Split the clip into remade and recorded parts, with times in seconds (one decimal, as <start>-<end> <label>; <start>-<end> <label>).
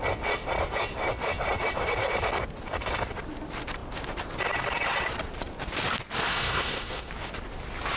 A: 0.0-6.2 recorded; 6.2-7.1 remade; 7.1-8.0 recorded